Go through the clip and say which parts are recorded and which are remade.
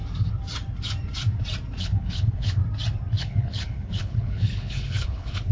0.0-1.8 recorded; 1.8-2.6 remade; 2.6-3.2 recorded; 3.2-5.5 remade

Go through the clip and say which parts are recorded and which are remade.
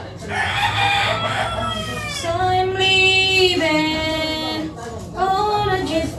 0.0-6.2 recorded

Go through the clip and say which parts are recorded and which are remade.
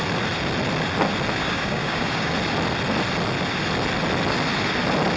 0.0-1.4 recorded; 1.4-2.3 remade; 2.3-5.2 recorded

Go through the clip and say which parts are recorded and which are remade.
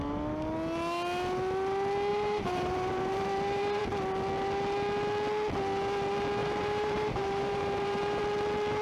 0.0-2.1 recorded; 2.1-3.8 remade; 3.8-6.4 recorded; 6.4-8.2 remade; 8.2-8.8 recorded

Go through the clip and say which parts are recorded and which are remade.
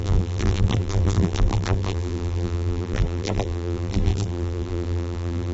0.0-5.5 remade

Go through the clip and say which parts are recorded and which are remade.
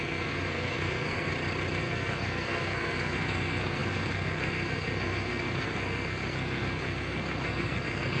0.0-1.3 remade; 1.3-1.8 recorded; 1.8-8.2 remade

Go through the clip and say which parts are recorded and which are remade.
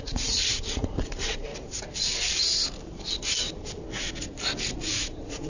0.0-1.5 remade; 1.5-4.8 recorded; 4.8-5.5 remade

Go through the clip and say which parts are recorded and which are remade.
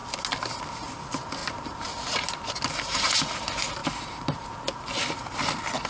0.0-1.4 recorded; 1.4-2.1 remade; 2.1-3.8 recorded; 3.8-4.5 remade; 4.5-5.9 recorded